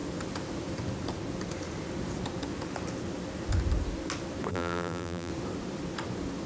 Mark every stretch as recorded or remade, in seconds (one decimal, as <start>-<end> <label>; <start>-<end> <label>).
0.0-4.5 recorded; 4.5-5.3 remade; 5.3-6.5 recorded